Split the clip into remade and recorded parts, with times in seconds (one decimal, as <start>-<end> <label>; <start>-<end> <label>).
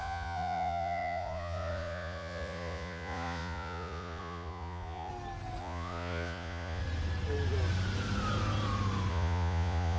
0.0-5.1 remade; 5.1-5.6 recorded; 5.6-6.8 remade; 6.8-9.1 recorded; 9.1-10.0 remade